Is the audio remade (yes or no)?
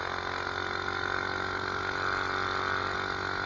no